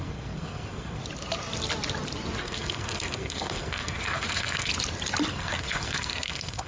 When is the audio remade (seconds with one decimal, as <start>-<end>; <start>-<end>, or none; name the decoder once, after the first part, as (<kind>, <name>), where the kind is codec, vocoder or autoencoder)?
0.0-1.0 (codec, SNAC); 2.4-4.7; 5.3-6.7